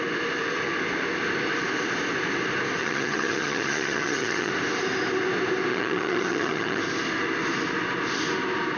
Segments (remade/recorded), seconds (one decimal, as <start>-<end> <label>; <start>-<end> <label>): 0.0-2.8 recorded; 2.8-4.5 remade; 4.5-5.7 recorded; 5.7-6.8 remade; 6.8-8.8 recorded